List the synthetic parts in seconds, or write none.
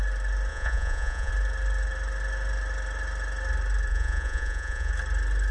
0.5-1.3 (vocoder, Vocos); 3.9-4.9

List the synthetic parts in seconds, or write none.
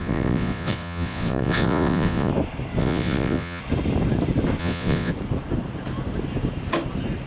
0.0-2.3 (vocoder, Vocos); 2.8-3.6; 4.6-5.1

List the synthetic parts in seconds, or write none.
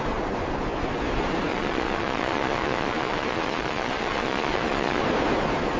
1.5-5.0 (vocoder, Vocos)